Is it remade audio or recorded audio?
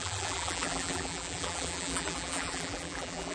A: remade